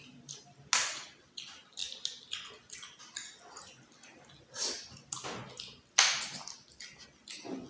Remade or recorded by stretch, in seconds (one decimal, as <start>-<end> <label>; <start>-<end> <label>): 0.0-7.7 recorded